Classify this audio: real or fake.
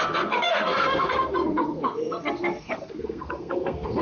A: fake